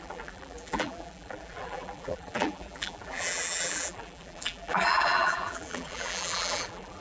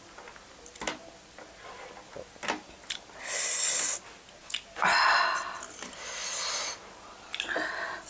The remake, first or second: first